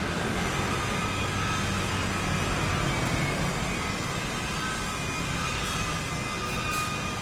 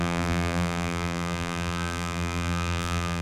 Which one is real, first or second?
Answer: first